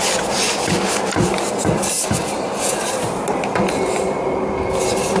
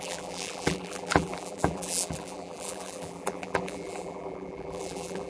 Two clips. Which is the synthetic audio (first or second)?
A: second